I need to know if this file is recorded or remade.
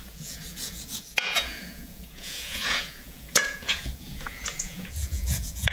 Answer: remade